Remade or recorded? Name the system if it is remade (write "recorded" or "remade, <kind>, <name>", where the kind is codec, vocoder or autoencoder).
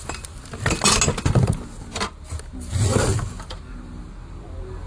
recorded